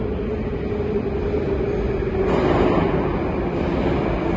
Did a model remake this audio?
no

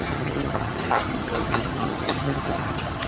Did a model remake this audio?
yes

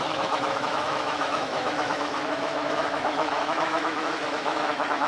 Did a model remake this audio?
yes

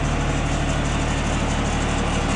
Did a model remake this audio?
no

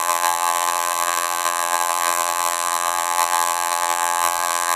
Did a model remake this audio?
yes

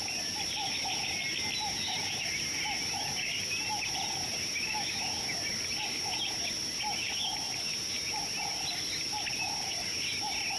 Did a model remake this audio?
no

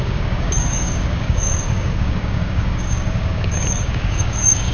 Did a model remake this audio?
yes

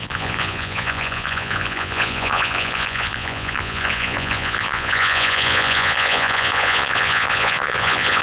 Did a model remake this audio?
yes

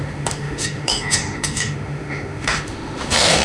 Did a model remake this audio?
yes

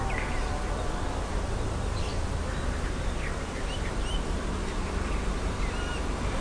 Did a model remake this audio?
no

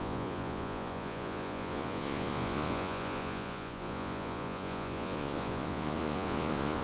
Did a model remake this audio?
yes